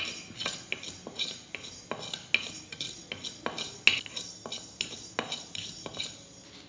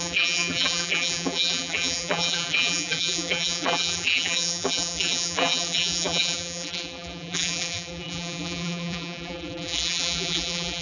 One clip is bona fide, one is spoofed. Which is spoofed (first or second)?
second